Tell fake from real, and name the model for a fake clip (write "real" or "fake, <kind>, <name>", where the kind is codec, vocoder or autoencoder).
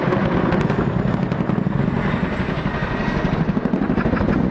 real